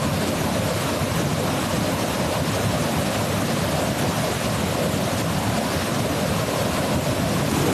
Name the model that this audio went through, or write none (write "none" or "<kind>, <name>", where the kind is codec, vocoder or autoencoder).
none